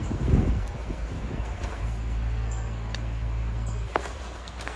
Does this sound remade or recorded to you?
remade